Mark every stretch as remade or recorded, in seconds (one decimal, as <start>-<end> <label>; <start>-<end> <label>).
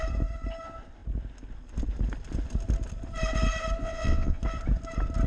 0.0-3.8 recorded; 3.8-4.4 remade; 4.4-5.3 recorded